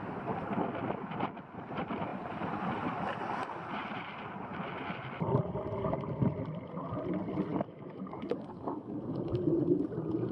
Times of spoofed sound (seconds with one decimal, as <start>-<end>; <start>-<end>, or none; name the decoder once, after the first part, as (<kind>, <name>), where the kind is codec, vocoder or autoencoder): 7.5-9.2 (codec, DAC)